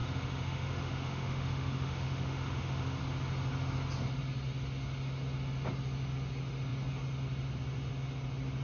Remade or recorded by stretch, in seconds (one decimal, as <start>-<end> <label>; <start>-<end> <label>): 0.0-3.0 remade; 3.0-8.6 recorded